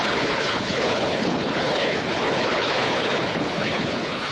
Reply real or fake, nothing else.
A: fake